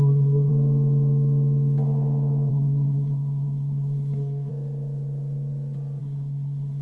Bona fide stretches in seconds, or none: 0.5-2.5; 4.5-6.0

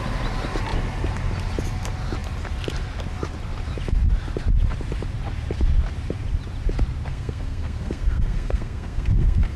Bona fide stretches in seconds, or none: 0.0-7.1

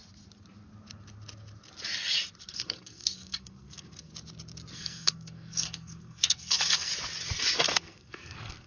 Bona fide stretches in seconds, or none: 0.0-2.4; 4.1-4.7; 6.9-7.4

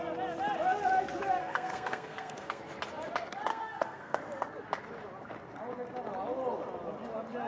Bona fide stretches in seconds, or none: 0.0-1.4; 2.6-3.5; 4.2-7.5

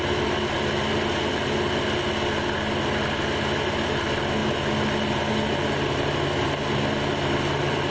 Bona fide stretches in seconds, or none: 0.0-7.9

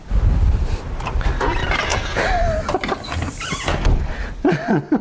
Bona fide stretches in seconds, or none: 0.0-5.0

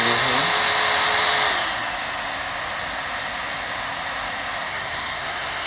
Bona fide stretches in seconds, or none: 0.0-4.7